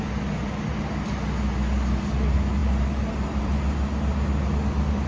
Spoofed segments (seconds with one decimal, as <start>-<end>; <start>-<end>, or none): none